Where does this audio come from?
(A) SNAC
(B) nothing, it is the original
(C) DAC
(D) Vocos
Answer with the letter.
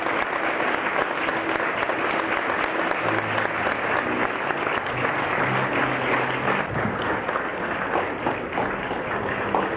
B